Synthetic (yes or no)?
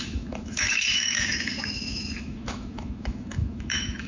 yes